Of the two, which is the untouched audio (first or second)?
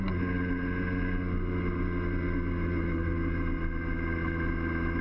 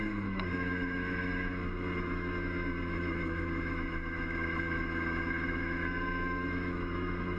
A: first